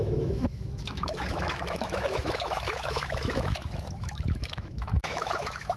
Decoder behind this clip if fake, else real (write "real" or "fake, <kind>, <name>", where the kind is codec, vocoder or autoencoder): fake, autoencoder, DAC-VAE